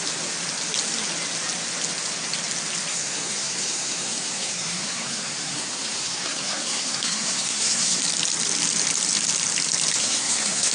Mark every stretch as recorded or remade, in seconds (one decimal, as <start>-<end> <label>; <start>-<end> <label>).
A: 0.0-2.9 recorded; 2.9-8.0 remade; 8.0-10.0 recorded; 10.0-10.7 remade